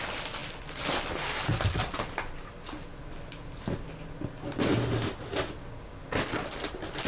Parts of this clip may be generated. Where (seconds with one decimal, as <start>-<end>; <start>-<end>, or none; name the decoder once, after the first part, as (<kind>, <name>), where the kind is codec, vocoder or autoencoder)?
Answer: none